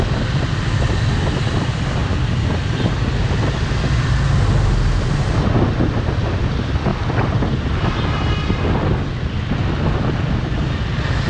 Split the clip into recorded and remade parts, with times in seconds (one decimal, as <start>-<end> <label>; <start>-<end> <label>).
0.0-11.3 recorded